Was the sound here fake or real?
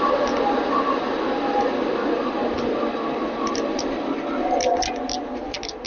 real